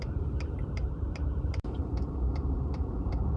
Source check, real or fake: fake